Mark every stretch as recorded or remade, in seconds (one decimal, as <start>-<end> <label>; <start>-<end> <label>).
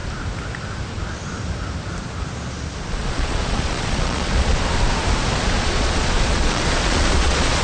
0.0-2.9 recorded; 2.9-4.5 remade; 4.5-5.4 recorded; 5.4-7.6 remade